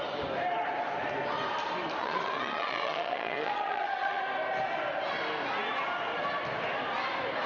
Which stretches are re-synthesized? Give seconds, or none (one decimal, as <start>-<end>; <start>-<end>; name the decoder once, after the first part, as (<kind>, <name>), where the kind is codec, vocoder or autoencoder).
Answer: 2.0-4.2 (vocoder, Vocos)